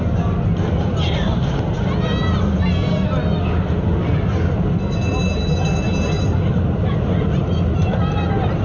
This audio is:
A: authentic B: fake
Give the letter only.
A